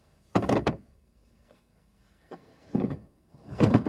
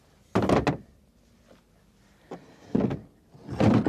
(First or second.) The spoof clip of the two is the first